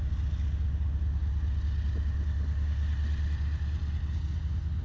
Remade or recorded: recorded